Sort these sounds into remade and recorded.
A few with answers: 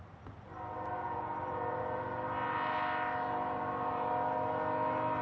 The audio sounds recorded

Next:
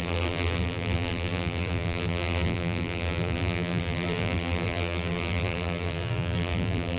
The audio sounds remade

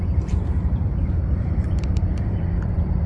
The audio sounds remade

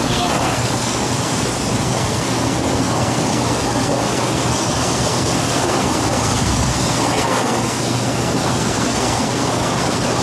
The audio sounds remade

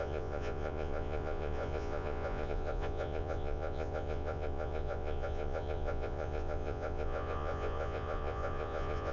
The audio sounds remade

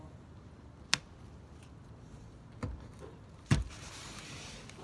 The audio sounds recorded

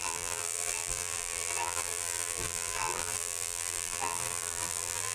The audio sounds remade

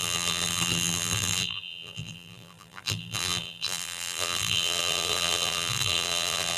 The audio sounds remade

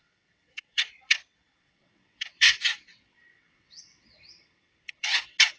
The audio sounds remade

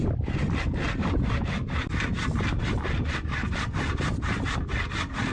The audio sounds recorded